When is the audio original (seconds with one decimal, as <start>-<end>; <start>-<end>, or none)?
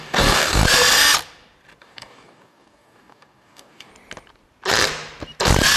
0.6-1.8; 3.9-5.8